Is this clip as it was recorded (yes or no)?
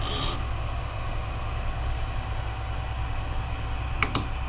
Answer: yes